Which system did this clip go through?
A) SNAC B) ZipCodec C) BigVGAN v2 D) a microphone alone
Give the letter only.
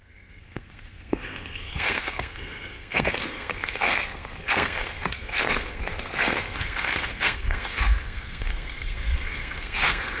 A